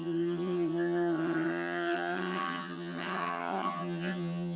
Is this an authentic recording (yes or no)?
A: no